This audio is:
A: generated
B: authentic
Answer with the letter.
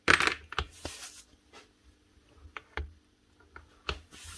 B